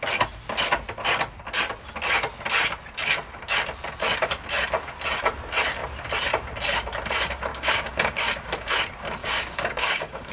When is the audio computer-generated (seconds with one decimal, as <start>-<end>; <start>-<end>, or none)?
7.5-8.3; 9.2-10.3

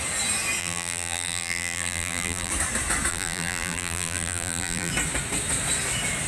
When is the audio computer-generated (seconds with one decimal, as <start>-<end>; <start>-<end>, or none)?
0.6-2.5; 3.1-4.9

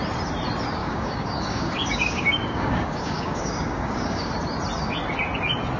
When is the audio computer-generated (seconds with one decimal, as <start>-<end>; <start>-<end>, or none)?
0.8-4.3

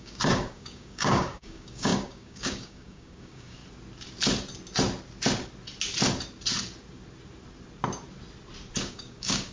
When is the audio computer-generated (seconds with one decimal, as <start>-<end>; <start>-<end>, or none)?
0.0-3.6; 8.8-9.5